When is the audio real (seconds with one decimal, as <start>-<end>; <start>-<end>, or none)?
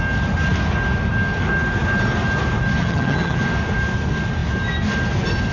0.0-2.8; 3.4-5.5